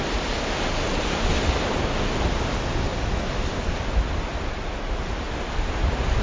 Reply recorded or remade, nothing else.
recorded